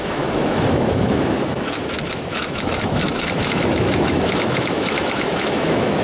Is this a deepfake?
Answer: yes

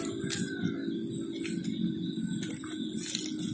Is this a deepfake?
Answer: no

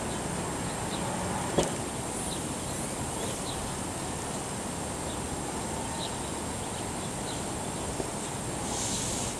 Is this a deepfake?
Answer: no